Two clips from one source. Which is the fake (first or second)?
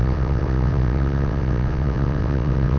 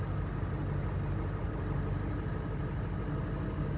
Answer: first